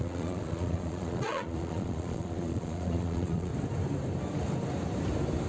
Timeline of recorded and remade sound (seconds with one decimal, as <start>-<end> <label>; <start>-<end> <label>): 0.0-3.5 remade; 3.5-5.5 recorded